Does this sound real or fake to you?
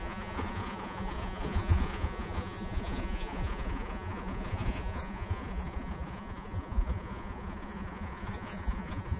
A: fake